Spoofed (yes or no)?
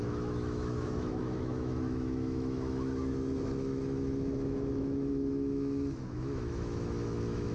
yes